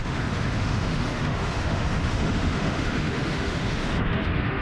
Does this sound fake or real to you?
fake